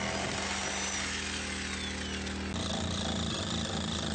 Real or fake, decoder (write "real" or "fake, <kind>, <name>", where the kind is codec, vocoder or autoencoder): real